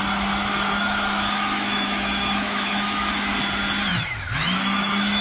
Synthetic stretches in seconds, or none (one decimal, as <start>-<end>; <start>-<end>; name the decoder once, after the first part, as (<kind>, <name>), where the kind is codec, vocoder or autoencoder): 0.4-3.3 (autoencoder, DAC-VAE); 3.9-5.2